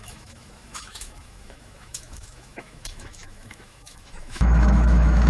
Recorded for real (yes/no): no